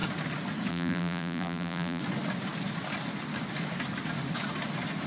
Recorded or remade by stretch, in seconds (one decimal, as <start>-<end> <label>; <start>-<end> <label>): 0.0-0.7 recorded; 0.7-2.0 remade; 2.0-5.1 recorded